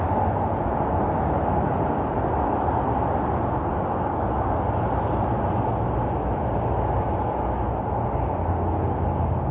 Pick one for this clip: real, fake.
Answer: real